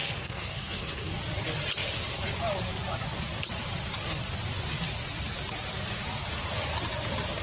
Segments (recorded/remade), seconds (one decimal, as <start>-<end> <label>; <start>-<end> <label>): 0.0-1.2 remade; 1.2-7.4 recorded